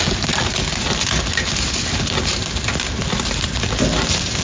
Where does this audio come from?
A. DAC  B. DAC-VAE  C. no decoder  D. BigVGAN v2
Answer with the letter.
C